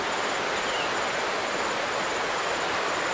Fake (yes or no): no